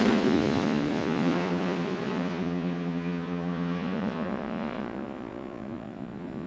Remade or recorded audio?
remade